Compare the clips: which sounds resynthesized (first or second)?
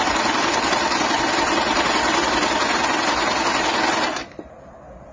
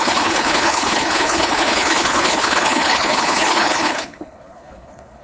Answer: second